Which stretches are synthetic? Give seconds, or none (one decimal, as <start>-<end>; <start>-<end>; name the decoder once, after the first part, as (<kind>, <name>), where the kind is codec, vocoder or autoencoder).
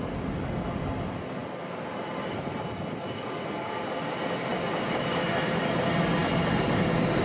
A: 4.5-5.3 (vocoder, BigVGAN v2)